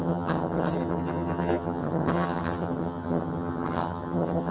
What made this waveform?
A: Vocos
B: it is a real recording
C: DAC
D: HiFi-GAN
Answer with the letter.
D